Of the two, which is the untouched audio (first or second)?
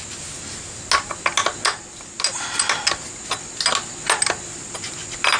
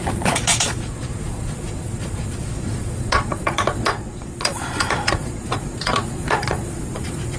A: first